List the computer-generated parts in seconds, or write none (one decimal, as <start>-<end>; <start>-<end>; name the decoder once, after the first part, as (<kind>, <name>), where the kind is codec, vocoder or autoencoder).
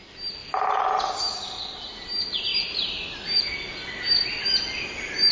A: 2.5-3.5 (vocoder, BigVGAN v2)